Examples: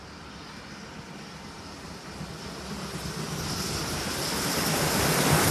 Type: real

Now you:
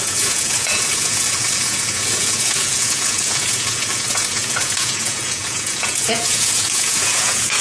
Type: fake